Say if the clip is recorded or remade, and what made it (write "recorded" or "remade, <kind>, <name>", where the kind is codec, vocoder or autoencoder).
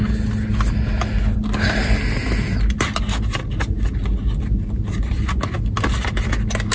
recorded